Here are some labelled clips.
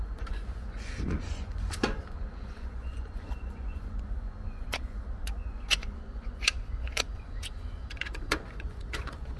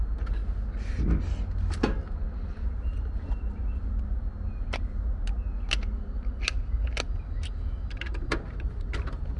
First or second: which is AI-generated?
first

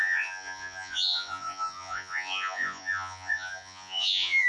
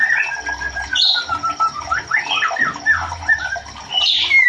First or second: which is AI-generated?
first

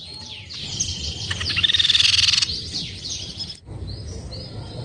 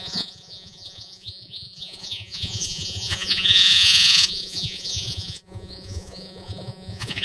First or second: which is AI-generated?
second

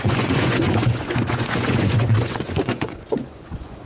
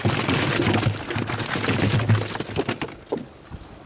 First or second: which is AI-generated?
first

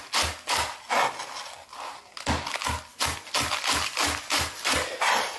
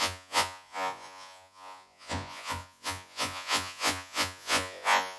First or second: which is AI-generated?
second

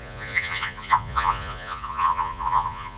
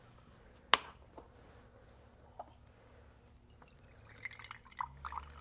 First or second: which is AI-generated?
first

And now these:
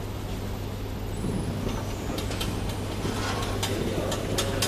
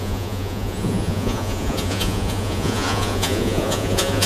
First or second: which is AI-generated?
second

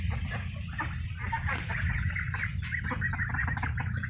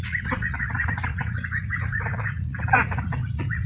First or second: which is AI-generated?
second